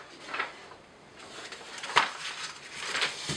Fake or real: real